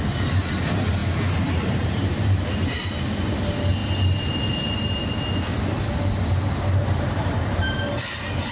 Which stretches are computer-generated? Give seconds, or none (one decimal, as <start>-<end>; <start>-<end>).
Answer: 1.0-2.9; 6.8-7.6